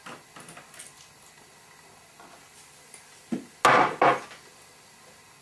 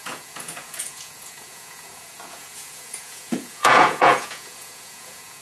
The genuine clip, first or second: first